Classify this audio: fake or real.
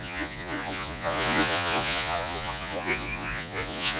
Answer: fake